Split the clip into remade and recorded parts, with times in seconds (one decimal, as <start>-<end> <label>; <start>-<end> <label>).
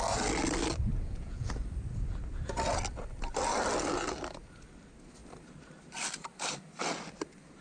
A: 0.0-0.9 recorded; 0.9-1.5 remade; 1.5-7.6 recorded